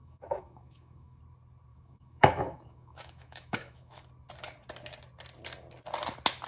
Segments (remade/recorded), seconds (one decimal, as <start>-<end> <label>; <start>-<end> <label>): 0.0-1.2 remade; 1.2-1.7 recorded; 1.7-4.0 remade; 4.0-6.5 recorded